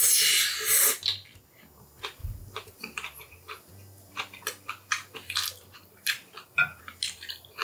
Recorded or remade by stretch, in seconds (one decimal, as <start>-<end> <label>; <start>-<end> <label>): 0.0-2.2 recorded; 2.2-6.8 remade; 6.8-7.6 recorded